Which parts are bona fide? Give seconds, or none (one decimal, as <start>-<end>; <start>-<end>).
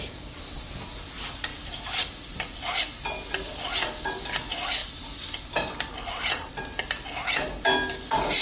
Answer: 0.0-8.4